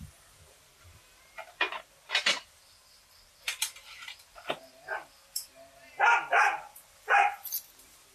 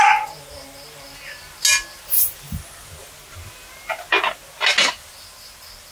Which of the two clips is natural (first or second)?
second